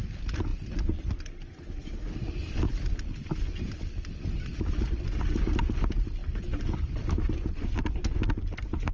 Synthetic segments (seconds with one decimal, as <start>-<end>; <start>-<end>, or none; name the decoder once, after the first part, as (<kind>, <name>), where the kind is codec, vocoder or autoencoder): none